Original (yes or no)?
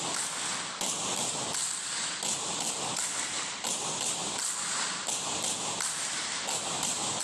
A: yes